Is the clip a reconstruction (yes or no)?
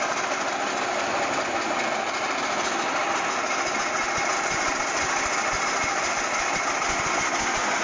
no